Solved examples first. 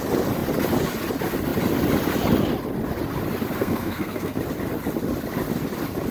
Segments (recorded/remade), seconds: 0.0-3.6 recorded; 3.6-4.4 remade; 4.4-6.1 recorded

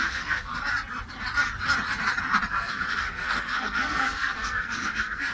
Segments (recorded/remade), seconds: 0.0-0.5 remade; 0.5-2.5 recorded; 2.5-5.3 remade

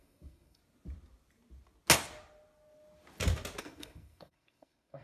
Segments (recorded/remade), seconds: 0.0-0.6 remade; 0.6-3.6 recorded; 3.6-5.0 remade

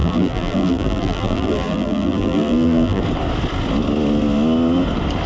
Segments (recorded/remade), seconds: 0.0-3.0 remade; 3.0-5.3 recorded

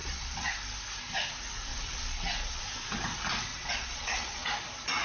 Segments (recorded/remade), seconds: 0.0-0.5 remade; 0.5-1.7 recorded; 1.7-2.6 remade; 2.6-3.5 recorded; 3.5-4.5 remade; 4.5-5.0 recorded

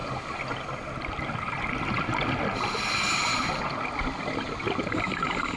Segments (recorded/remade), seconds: 0.0-5.6 recorded

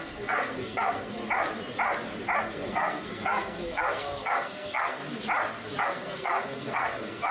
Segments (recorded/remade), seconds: 0.0-1.2 remade; 1.2-2.4 recorded; 2.4-5.0 remade; 5.0-5.8 recorded; 5.8-7.3 remade

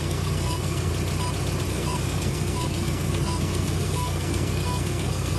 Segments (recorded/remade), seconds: 0.0-0.9 remade; 0.9-1.7 recorded; 1.7-5.4 remade